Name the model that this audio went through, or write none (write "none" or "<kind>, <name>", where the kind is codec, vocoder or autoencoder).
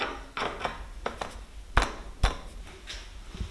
none